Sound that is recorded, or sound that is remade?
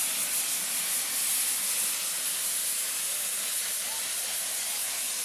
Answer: recorded